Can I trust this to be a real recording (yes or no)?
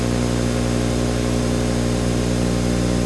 yes